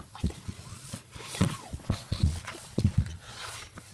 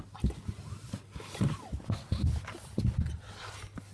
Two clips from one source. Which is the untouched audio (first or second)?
second